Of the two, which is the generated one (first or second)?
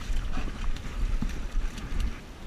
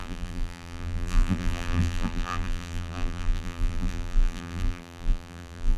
second